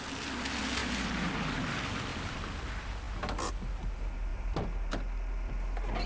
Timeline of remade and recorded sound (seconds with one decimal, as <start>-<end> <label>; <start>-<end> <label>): 0.0-0.8 recorded; 0.8-1.6 remade; 1.6-2.1 recorded; 2.1-2.6 remade; 2.6-4.3 recorded; 4.3-4.9 remade; 4.9-6.1 recorded